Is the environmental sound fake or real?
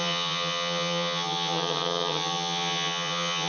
fake